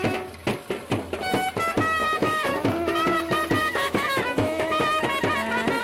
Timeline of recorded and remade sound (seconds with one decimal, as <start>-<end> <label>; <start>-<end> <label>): 0.0-2.0 recorded; 2.0-2.6 remade; 2.6-3.6 recorded; 3.6-4.8 remade; 4.8-5.8 recorded